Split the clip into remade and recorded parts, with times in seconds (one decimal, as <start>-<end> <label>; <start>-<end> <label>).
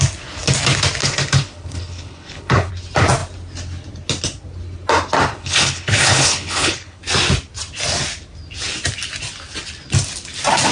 0.0-1.0 recorded; 1.0-2.7 remade; 2.7-5.3 recorded; 5.3-7.0 remade; 7.0-10.7 recorded